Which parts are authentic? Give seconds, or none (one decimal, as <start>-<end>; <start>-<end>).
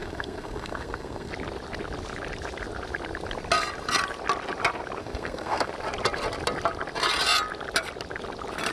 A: 1.3-5.0; 5.7-8.7